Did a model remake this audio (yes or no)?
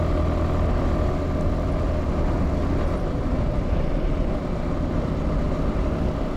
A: no